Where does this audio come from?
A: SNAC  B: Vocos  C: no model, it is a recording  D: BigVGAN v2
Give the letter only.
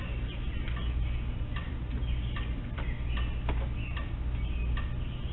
C